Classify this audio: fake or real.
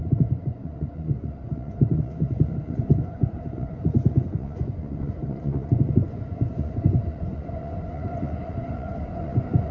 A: fake